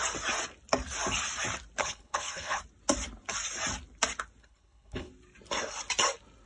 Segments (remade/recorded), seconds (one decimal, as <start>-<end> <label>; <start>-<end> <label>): 0.0-1.8 recorded; 1.8-2.6 remade; 2.6-4.4 recorded; 4.4-5.1 remade; 5.1-6.5 recorded